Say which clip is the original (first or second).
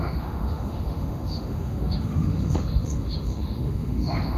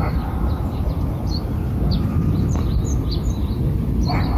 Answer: second